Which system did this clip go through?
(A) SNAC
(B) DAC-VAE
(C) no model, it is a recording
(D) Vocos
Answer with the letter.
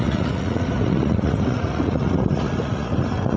D